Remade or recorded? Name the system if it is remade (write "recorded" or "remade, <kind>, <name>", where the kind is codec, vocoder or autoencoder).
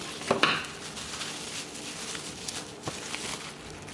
recorded